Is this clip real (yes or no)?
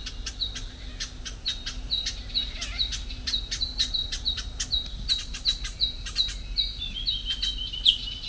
yes